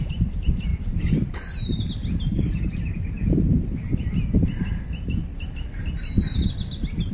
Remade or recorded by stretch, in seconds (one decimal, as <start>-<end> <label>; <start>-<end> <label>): 0.0-0.7 recorded; 0.7-1.3 remade; 1.3-7.1 recorded